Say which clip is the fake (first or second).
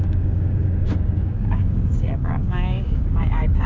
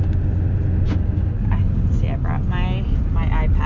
first